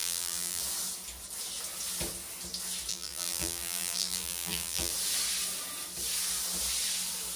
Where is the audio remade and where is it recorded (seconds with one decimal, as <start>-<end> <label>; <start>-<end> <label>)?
0.0-0.6 remade; 0.6-2.9 recorded; 2.9-4.9 remade; 4.9-7.4 recorded